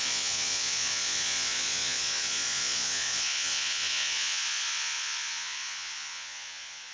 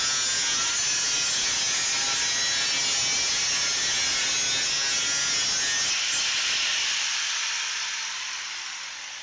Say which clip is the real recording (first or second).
second